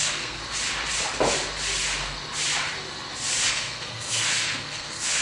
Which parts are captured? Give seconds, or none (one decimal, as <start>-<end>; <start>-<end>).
0.4-3.5